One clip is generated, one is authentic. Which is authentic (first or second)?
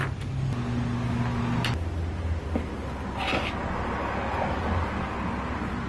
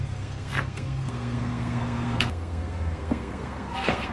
first